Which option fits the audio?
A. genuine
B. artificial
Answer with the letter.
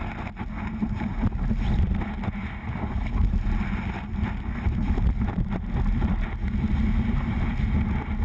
A